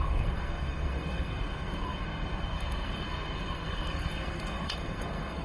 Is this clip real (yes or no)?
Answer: no